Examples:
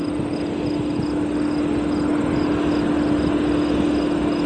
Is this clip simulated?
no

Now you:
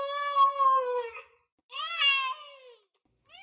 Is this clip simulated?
no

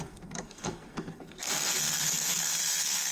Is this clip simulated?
yes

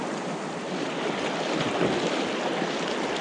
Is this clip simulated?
no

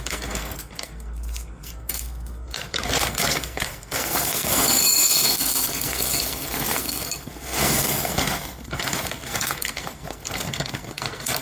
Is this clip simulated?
yes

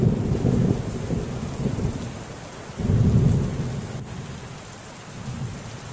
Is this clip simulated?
no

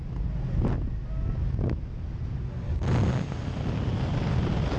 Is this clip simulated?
no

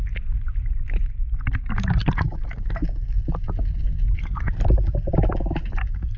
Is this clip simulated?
no